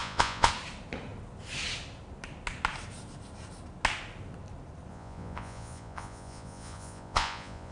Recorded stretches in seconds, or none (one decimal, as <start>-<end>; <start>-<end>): 0.5-4.9